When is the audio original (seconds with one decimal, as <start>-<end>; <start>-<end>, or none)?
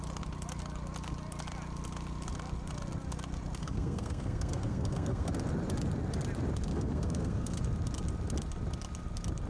0.0-3.6; 5.3-6.7; 7.6-9.5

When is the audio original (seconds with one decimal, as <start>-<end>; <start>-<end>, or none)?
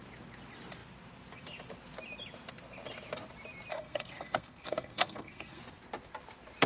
0.0-3.7; 5.6-6.7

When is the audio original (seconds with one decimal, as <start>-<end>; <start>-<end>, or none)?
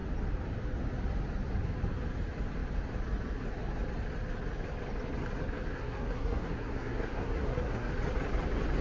0.0-5.7; 7.9-8.8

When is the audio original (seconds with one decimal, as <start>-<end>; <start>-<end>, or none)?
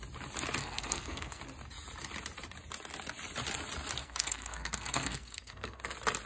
0.0-0.6; 1.4-4.0; 5.8-6.3